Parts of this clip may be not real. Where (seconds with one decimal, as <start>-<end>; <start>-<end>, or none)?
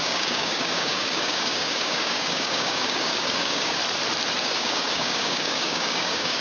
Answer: 0.0-3.8; 4.4-6.4